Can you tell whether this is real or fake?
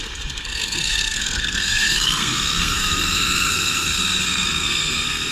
fake